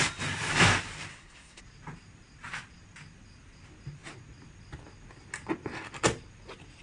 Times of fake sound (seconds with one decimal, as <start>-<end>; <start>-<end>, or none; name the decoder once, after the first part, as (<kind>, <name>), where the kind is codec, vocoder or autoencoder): 1.1-1.6 (codec, SNAC)